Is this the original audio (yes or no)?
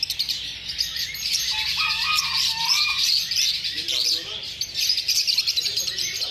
yes